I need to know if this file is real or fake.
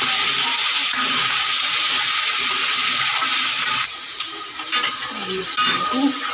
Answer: fake